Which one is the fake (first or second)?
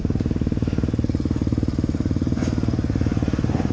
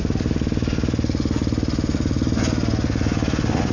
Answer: first